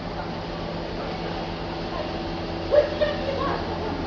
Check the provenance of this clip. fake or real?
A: real